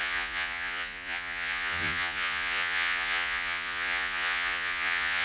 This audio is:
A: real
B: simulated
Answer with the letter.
B